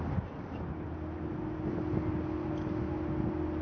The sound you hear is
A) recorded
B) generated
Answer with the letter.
A